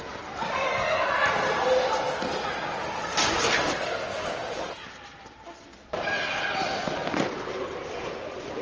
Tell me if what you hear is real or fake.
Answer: real